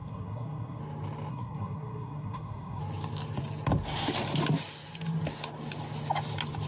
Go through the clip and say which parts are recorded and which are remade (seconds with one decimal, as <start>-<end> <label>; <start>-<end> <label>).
0.0-0.8 remade; 0.8-1.3 recorded; 1.3-2.8 remade; 2.8-6.7 recorded